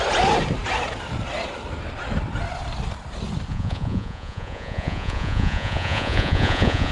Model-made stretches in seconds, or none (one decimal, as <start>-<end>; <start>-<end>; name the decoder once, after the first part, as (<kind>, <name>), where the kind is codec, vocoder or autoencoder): 3.5-6.9 (vocoder, Vocos)